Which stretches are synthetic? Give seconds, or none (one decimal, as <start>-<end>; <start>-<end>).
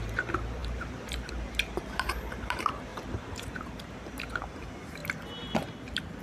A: 0.0-5.0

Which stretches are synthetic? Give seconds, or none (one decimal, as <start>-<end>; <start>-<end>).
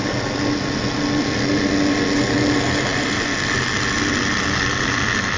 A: none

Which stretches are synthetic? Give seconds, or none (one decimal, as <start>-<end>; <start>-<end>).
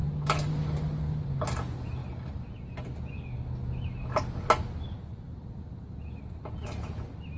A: 0.0-1.0